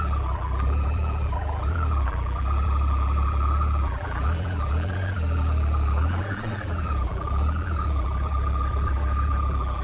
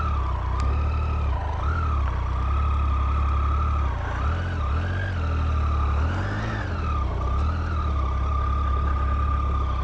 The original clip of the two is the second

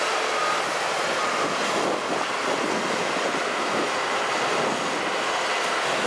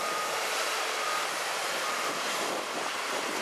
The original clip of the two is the first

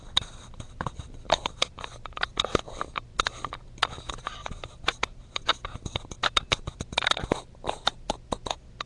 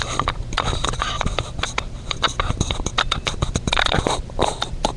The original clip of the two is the first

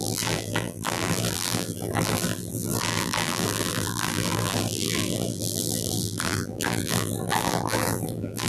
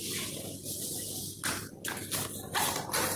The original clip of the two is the second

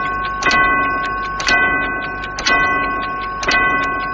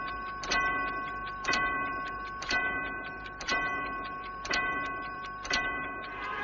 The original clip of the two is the first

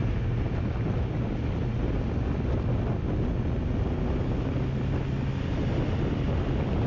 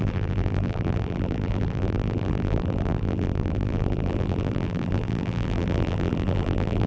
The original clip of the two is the first